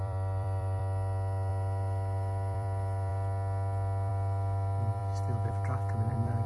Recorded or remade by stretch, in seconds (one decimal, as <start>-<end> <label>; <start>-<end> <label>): 0.0-0.8 remade; 0.8-1.5 recorded; 1.5-3.1 remade; 3.1-4.1 recorded; 4.1-5.0 remade; 5.0-5.5 recorded; 5.5-6.5 remade